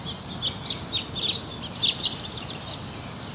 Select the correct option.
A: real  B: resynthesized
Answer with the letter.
A